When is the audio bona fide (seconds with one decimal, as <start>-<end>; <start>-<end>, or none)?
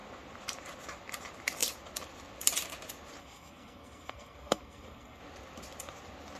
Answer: 0.0-3.2; 5.2-6.4